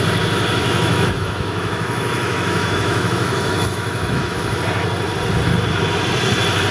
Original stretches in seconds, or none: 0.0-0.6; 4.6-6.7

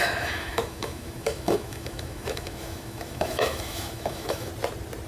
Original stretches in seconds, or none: 4.5-5.1

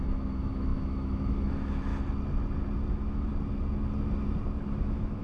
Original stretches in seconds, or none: 1.9-2.9; 3.3-4.7

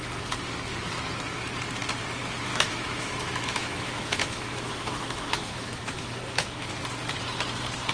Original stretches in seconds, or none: 0.0-2.5; 6.7-7.9

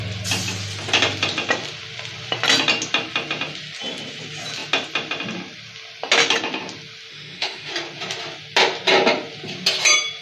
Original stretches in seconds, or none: 0.0-7.1; 7.7-10.2